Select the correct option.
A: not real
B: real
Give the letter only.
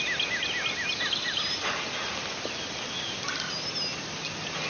B